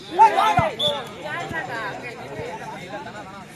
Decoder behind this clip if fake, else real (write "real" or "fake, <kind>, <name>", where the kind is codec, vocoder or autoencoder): fake, vocoder, BigVGAN v2